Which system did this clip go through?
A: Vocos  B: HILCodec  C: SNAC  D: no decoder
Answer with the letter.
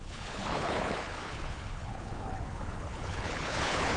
B